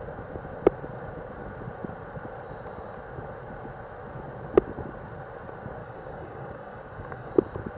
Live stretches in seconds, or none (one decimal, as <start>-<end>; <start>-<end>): 0.0-5.8; 7.3-7.8